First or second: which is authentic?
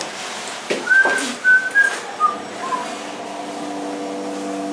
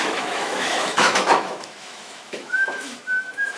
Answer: first